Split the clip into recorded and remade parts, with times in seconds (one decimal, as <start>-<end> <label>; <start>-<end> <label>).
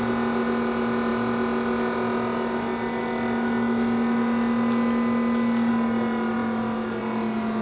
0.0-7.6 recorded